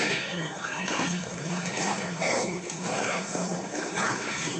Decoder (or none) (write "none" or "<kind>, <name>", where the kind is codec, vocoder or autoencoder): codec, SNAC